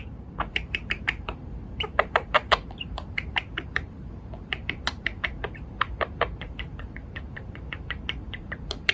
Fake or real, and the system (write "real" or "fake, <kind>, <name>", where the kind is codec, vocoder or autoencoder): fake, vocoder, BigVGAN v2